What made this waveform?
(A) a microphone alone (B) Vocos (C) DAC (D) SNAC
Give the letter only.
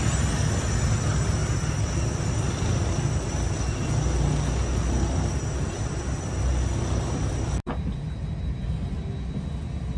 A